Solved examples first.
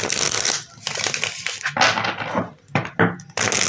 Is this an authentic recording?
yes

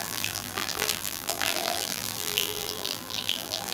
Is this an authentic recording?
no